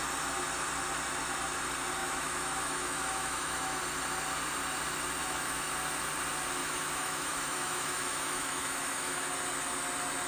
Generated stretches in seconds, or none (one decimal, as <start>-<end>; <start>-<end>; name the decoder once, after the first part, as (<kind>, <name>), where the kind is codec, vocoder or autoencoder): 2.0-3.8 (autoencoder, DAC-VAE); 5.2-5.7; 6.6-9.3